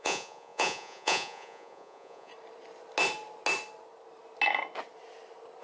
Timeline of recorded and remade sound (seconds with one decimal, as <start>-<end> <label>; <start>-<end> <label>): 0.0-2.3 remade; 2.3-5.6 recorded